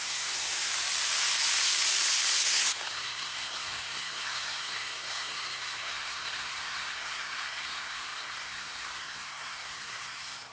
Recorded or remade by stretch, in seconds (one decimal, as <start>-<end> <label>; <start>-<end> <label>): 0.0-0.7 remade; 0.7-2.4 recorded; 2.4-10.5 remade